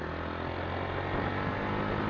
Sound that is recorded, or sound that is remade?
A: recorded